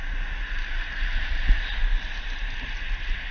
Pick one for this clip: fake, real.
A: real